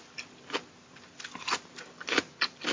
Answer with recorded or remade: recorded